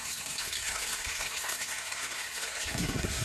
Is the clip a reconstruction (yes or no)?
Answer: yes